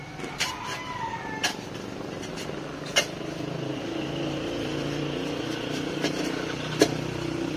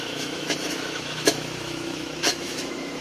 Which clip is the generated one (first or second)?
second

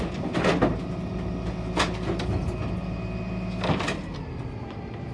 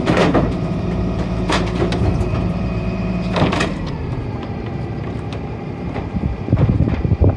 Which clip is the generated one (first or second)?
second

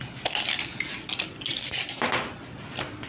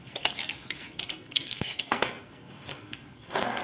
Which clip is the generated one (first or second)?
second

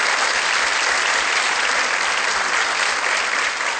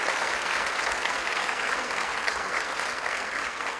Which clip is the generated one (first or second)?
second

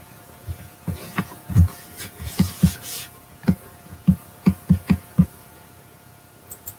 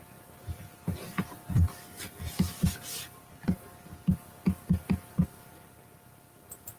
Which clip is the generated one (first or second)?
first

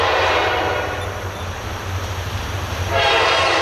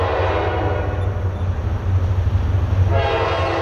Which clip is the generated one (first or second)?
first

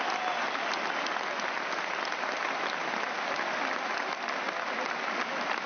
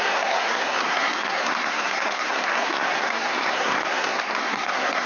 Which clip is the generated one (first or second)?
second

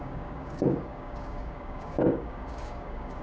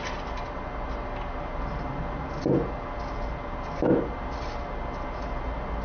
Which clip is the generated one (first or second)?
first